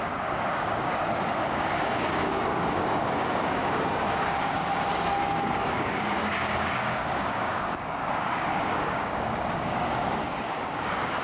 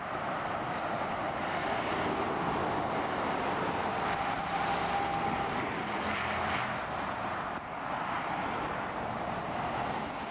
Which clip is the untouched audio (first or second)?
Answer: second